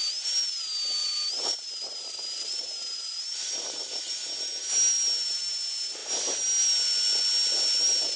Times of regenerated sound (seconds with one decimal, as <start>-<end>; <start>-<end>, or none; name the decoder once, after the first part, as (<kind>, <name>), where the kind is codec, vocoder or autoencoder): 1.0-4.0 (vocoder, BigVGAN v2)